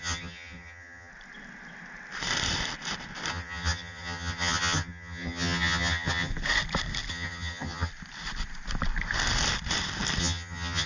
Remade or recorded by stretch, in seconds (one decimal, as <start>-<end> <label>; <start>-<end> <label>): 0.0-1.1 remade; 1.1-3.3 recorded; 3.3-6.3 remade; 6.3-7.1 recorded; 7.1-7.9 remade; 7.9-10.2 recorded; 10.2-10.9 remade